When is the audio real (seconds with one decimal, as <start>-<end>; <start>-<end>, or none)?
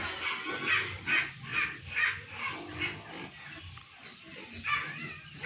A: 0.0-5.5